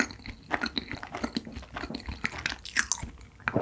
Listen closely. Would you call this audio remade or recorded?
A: recorded